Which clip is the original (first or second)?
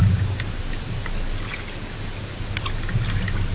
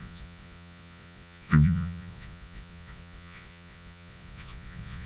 first